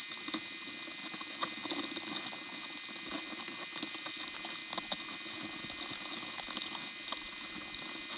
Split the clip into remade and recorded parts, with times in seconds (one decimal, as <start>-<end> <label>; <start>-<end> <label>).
0.0-8.2 recorded